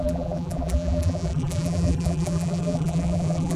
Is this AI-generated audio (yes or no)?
yes